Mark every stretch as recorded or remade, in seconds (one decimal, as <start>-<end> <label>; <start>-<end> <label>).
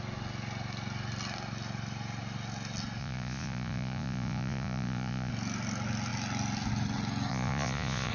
0.0-3.0 recorded; 3.0-5.3 remade; 5.3-7.3 recorded; 7.3-8.1 remade